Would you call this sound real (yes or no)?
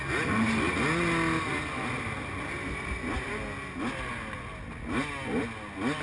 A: yes